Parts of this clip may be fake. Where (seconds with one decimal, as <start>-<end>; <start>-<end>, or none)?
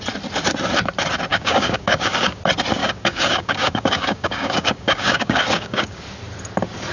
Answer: 1.3-2.4; 2.8-6.0